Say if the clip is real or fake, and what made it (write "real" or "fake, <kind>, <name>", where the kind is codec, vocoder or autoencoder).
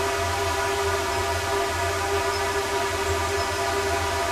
real